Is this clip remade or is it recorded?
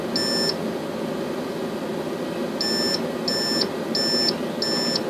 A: recorded